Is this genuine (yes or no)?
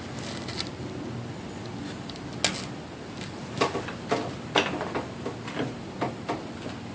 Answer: yes